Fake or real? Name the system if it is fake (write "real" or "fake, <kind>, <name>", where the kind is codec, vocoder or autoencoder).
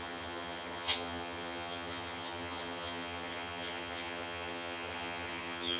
fake, vocoder, HiFi-GAN